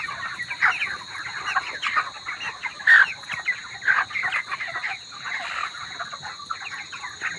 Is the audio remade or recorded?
recorded